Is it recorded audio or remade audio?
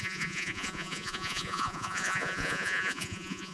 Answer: remade